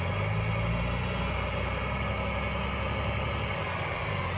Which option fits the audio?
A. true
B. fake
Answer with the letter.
A